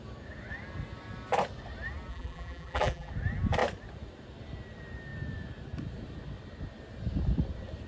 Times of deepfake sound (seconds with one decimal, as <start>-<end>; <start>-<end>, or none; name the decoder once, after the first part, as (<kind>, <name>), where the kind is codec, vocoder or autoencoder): 2.1-3.1 (vocoder, BigVGAN v2)